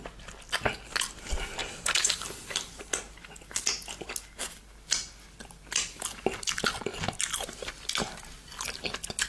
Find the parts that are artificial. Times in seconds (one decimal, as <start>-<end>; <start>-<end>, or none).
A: 1.6-3.0